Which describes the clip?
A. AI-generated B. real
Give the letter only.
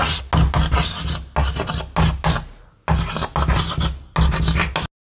B